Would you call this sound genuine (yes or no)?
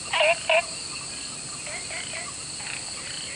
yes